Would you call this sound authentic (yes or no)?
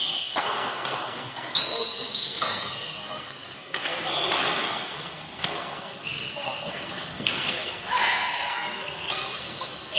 no